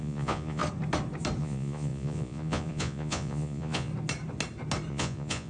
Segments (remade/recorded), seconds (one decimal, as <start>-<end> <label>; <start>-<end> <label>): 0.0-0.6 remade; 0.6-1.4 recorded; 1.4-3.9 remade; 3.9-4.9 recorded; 4.9-5.5 remade